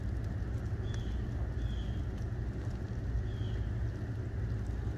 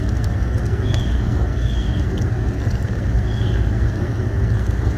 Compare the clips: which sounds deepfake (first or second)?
second